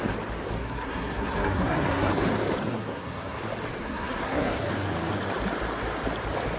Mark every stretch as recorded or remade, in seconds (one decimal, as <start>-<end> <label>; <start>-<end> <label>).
0.0-0.6 recorded; 0.6-2.1 remade; 2.1-2.7 recorded; 2.7-3.4 remade; 3.4-3.8 recorded; 3.8-4.7 remade; 4.7-6.6 recorded